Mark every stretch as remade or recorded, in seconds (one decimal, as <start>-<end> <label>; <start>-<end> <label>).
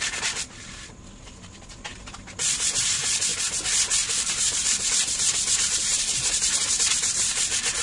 0.0-3.3 remade; 3.3-4.1 recorded; 4.1-7.8 remade